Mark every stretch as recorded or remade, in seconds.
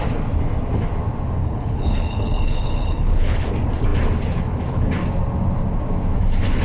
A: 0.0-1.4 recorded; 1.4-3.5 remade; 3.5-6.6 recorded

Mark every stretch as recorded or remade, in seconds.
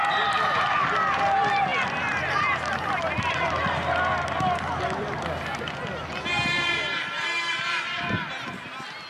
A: 0.0-9.1 recorded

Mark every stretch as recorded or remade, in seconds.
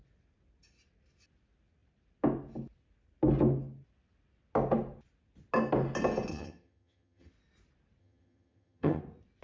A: 0.0-6.3 recorded; 6.3-7.3 remade; 7.3-8.0 recorded; 8.0-9.0 remade; 9.0-9.4 recorded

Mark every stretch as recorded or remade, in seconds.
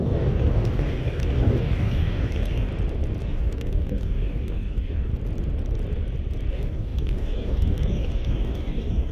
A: 0.0-2.7 remade; 2.7-3.2 recorded; 3.2-5.1 remade; 5.1-6.5 recorded; 6.5-9.1 remade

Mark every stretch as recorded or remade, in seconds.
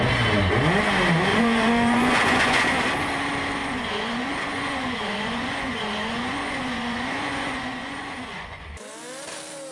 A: 0.0-1.3 recorded; 1.3-2.6 remade; 2.6-3.6 recorded; 3.6-8.7 remade; 8.7-9.7 recorded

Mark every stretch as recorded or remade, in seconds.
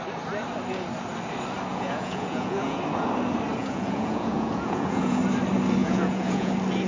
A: 0.0-1.7 recorded; 1.7-2.8 remade; 2.8-3.6 recorded; 3.6-5.2 remade; 5.2-5.8 recorded; 5.8-6.5 remade; 6.5-6.9 recorded